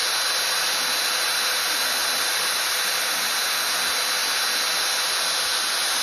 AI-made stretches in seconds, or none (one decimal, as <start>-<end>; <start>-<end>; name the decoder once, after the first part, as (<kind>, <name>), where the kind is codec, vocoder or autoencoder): 2.0-3.1 (vocoder, BigVGAN v2)